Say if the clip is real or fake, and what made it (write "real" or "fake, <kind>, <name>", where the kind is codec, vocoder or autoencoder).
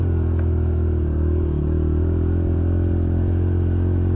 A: real